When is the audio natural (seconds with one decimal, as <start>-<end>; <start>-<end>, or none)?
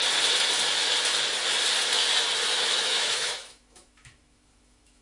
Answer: 0.0-2.5